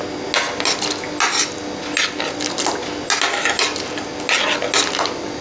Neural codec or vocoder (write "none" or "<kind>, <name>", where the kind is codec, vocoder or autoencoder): none